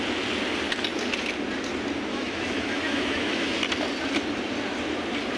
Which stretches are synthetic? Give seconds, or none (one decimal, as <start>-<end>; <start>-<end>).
2.1-3.5